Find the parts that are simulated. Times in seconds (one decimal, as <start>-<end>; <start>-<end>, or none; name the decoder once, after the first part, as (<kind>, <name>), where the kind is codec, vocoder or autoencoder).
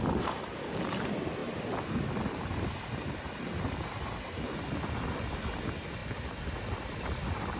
none